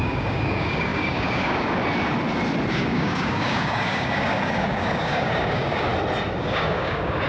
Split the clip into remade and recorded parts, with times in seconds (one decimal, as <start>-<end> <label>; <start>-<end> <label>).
0.0-1.8 remade; 1.8-2.7 recorded; 2.7-5.9 remade; 5.9-6.4 recorded; 6.4-7.3 remade